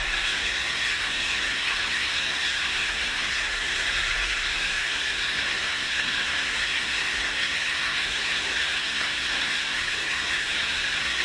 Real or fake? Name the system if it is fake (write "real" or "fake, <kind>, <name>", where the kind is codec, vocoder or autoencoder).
fake, codec, SNAC